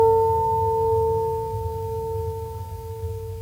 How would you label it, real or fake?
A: fake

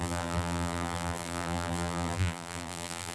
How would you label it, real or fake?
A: fake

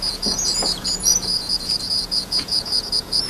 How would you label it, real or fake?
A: fake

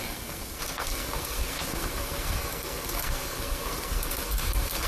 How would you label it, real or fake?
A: fake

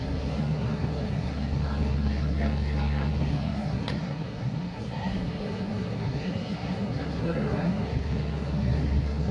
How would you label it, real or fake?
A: fake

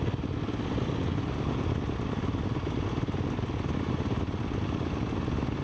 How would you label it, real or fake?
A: real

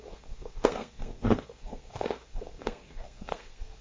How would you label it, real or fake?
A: fake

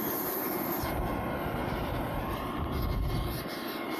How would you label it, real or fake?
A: fake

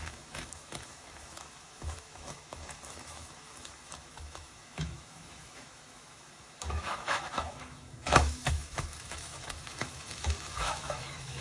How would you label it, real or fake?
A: fake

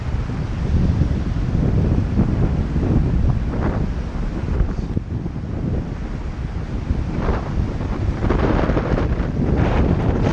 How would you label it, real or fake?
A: real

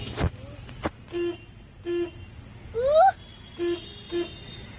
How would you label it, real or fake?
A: real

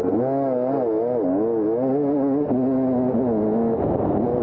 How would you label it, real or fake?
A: real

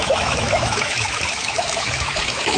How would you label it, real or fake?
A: fake